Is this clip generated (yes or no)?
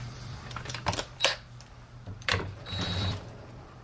yes